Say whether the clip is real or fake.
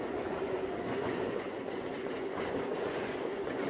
fake